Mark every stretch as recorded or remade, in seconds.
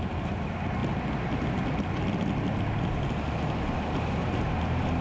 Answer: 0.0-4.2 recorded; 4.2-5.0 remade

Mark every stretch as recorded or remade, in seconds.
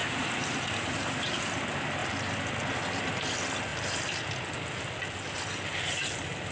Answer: 0.0-1.4 remade; 1.4-6.5 recorded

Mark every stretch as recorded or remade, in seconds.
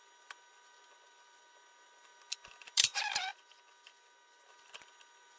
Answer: 0.0-2.1 remade; 2.1-2.6 recorded; 2.6-3.3 remade; 3.3-4.5 recorded; 4.5-5.4 remade